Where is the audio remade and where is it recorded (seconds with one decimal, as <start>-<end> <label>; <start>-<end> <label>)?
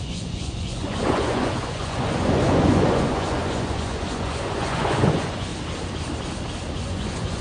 0.0-5.5 remade; 5.5-6.8 recorded; 6.8-7.4 remade